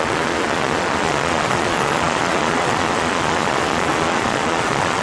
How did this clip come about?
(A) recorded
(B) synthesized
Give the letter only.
B